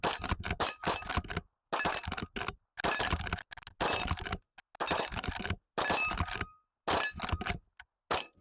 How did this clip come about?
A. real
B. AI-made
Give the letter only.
A